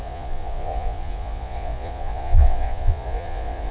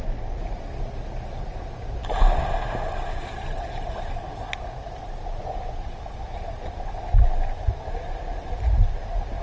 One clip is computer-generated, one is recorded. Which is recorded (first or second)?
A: second